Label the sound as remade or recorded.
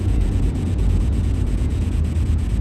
remade